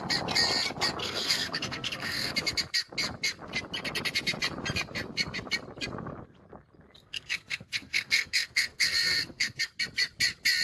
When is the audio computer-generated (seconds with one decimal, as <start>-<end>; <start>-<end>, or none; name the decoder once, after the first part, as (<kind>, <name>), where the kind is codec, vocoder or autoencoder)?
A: 1.0-2.3 (codec, SNAC); 7.0-9.6